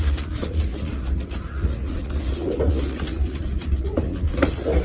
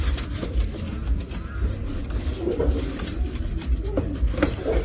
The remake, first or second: first